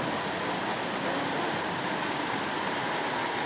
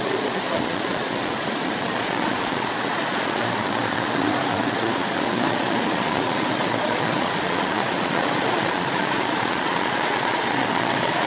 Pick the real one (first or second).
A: first